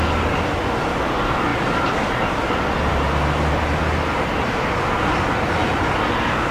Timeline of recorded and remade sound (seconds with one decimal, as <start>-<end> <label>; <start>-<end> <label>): 0.0-6.5 recorded